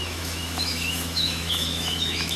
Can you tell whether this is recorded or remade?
remade